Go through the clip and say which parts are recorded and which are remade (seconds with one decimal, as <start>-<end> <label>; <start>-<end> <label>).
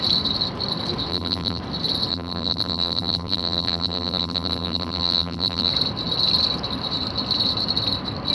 0.0-1.1 recorded; 1.1-1.6 remade; 1.6-2.1 recorded; 2.1-5.7 remade; 5.7-8.3 recorded